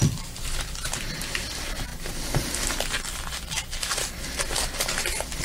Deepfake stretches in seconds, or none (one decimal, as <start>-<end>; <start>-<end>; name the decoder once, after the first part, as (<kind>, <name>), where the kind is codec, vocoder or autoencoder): none